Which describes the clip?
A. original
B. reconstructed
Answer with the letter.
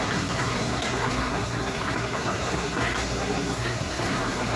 B